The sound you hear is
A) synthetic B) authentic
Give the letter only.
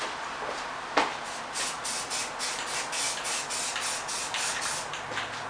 B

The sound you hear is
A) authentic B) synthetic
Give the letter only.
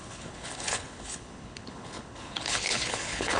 B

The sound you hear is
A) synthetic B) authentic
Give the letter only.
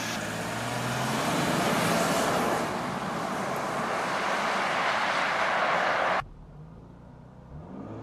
B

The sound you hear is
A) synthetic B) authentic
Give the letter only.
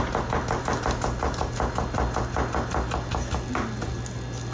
B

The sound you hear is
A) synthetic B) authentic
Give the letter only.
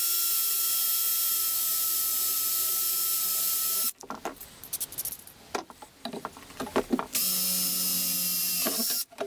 B